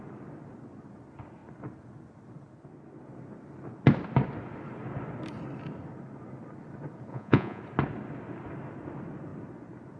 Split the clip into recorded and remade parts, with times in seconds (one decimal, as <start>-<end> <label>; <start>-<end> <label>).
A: 0.0-7.1 recorded; 7.1-7.6 remade; 7.6-10.0 recorded